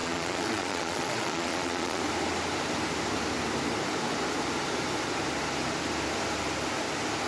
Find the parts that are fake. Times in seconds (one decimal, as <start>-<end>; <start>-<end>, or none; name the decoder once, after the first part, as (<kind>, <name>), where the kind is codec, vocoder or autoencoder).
0.0-2.0 (vocoder, Vocos)